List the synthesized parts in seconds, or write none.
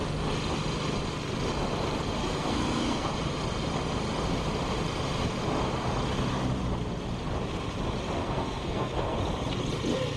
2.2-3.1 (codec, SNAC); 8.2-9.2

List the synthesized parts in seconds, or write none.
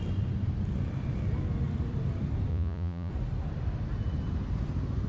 2.5-3.1 (vocoder, Vocos)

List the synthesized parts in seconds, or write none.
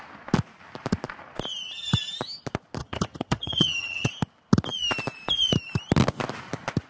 2.8-4.1 (vocoder, HiFi-GAN)